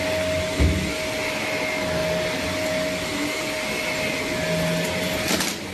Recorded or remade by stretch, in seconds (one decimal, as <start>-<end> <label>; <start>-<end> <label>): 0.0-5.7 recorded